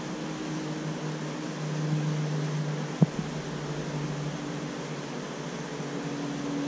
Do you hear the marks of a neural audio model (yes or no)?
no